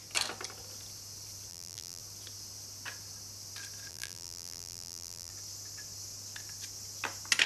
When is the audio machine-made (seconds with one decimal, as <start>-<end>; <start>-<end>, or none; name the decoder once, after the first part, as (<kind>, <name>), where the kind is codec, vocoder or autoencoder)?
1.5-2.0 (vocoder, BigVGAN v2); 3.9-5.3